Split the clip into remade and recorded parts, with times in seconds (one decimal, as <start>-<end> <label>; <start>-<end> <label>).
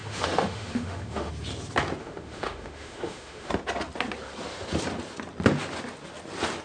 0.0-1.3 remade; 1.3-2.0 recorded; 2.0-3.5 remade; 3.5-6.6 recorded